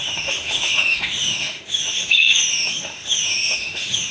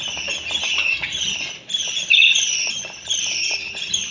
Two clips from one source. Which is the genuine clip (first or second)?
second